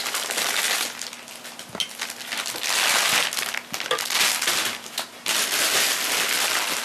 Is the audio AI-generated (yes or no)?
no